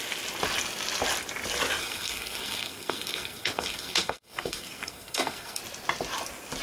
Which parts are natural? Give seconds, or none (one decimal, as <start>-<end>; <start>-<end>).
0.0-1.8; 5.6-6.6